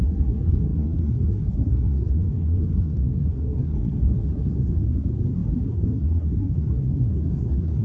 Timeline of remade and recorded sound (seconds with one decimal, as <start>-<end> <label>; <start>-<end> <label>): 0.0-7.8 remade